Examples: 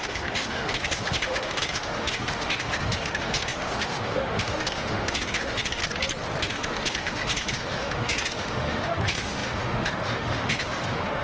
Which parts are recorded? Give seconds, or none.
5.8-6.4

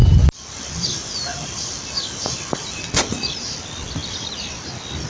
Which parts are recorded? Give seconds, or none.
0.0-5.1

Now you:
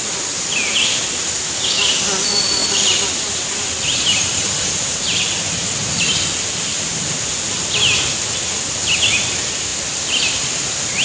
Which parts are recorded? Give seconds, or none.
0.0-2.6; 5.0-6.7; 7.3-11.0